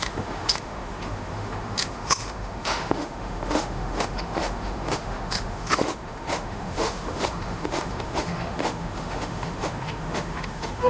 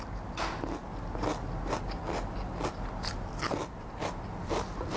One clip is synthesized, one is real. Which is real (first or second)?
second